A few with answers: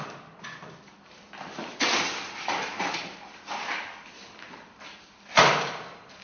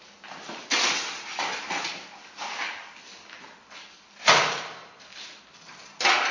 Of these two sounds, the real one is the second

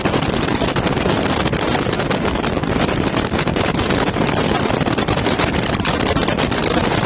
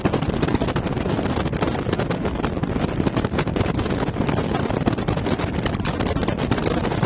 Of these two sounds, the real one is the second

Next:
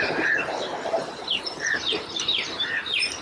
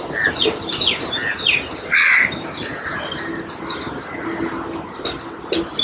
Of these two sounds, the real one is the second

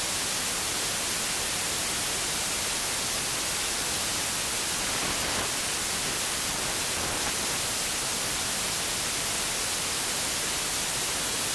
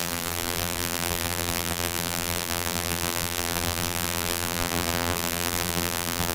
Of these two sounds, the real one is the first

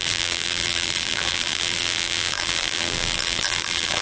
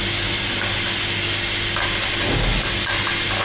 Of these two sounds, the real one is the second